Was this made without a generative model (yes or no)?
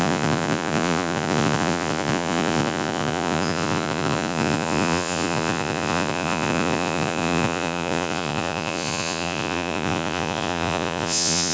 no